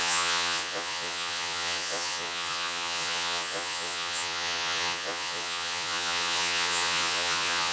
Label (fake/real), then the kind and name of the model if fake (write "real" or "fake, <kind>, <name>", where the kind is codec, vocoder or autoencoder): fake, vocoder, Vocos